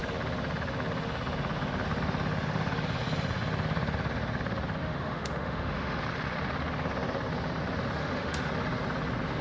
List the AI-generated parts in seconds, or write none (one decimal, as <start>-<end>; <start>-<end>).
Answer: 4.8-6.0; 8.0-8.5